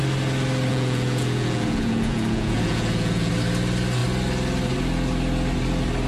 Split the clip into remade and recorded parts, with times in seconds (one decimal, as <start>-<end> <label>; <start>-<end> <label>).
0.0-0.7 recorded; 0.7-3.3 remade; 3.3-6.1 recorded